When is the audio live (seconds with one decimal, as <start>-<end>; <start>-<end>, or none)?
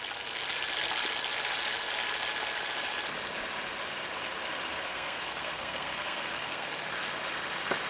0.0-4.8; 6.9-7.9